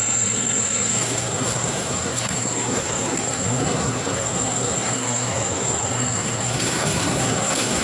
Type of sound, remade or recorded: remade